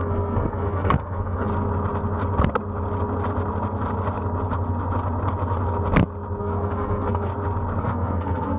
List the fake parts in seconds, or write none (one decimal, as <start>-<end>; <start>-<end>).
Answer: 0.0-1.5; 6.4-7.3; 7.8-8.6